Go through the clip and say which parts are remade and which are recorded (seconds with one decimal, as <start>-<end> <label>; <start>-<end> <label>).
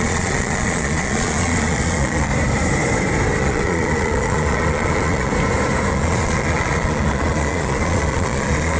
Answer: 0.0-2.3 remade; 2.3-3.4 recorded; 3.4-5.3 remade; 5.3-5.9 recorded; 5.9-8.8 remade